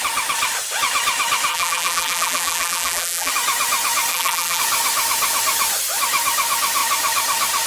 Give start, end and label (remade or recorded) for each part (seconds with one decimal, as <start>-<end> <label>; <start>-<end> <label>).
0.0-1.5 recorded; 1.5-3.3 remade; 3.3-4.1 recorded; 4.1-4.6 remade; 4.6-7.7 recorded